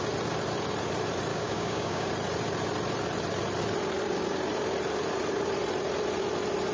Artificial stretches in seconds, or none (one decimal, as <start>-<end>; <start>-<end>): 1.3-2.1